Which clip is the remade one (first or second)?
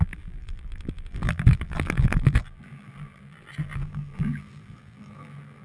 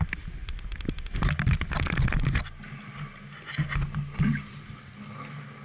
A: first